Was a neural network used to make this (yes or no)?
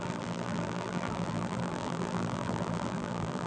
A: yes